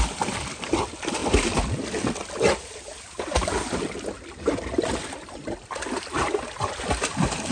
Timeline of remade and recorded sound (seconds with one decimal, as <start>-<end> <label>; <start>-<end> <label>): 0.0-7.5 recorded